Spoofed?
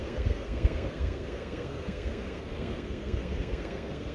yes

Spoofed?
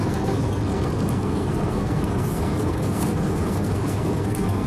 yes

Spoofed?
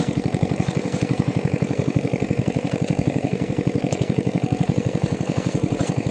yes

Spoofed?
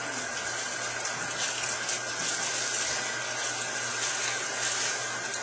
no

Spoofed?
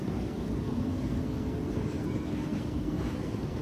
yes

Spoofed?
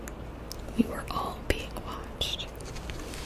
no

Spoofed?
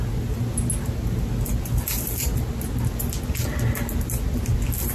no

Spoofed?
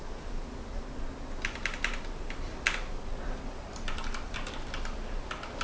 no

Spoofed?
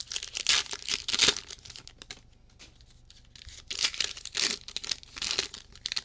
no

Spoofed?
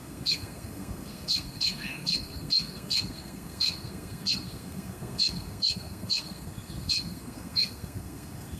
yes